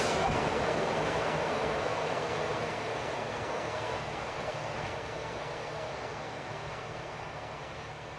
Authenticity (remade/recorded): remade